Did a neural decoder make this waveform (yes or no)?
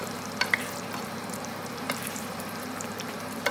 yes